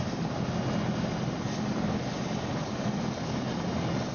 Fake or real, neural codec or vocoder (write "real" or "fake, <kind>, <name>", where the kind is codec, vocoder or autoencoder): real